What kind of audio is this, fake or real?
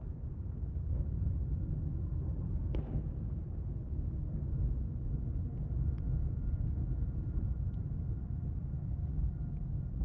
real